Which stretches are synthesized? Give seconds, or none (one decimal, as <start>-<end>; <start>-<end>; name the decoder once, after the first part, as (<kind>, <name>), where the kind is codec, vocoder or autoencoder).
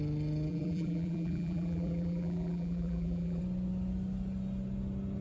0.5-3.4 (vocoder, BigVGAN v2)